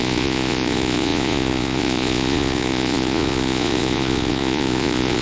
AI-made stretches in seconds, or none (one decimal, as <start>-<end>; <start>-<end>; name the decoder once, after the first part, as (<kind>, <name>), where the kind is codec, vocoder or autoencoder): 0.0-5.2 (vocoder, Vocos)